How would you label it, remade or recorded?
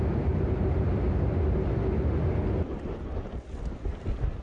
recorded